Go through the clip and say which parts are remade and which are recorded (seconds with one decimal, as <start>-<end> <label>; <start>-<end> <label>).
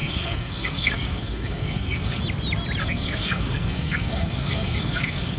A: 0.0-2.2 remade; 2.2-2.8 recorded; 2.8-5.4 remade